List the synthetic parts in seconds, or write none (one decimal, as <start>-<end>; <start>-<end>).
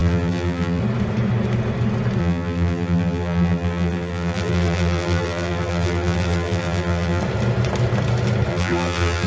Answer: 0.0-0.8; 2.2-7.2; 8.5-9.3